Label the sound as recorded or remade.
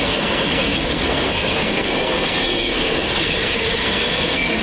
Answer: remade